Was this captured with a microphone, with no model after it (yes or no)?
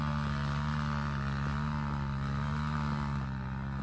yes